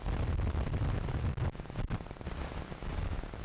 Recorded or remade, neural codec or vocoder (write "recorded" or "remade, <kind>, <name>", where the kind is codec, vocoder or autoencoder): recorded